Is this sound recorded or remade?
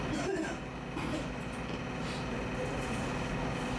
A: recorded